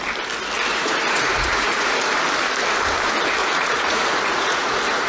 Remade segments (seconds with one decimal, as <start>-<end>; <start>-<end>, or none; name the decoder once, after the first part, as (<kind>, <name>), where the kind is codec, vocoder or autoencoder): 0.7-2.1 (vocoder, Vocos); 3.4-5.1